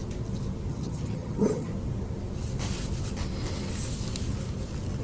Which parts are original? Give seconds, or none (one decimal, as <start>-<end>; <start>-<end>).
0.0-0.7; 1.7-5.0